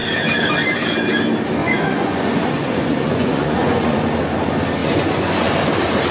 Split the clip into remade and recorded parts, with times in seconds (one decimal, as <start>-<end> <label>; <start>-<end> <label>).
0.0-1.6 recorded; 1.6-4.0 remade; 4.0-4.8 recorded; 4.8-5.5 remade; 5.5-6.1 recorded